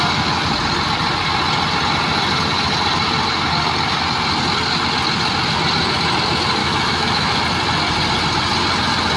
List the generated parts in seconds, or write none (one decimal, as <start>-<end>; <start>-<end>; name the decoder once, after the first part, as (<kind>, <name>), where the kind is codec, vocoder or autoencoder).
6.6-7.4 (autoencoder, DAC-VAE)